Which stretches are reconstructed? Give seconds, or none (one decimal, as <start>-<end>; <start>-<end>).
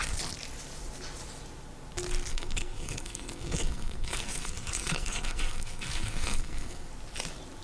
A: 2.3-6.9